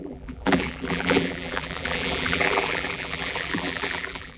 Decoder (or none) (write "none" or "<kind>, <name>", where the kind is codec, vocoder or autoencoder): vocoder, BigVGAN v2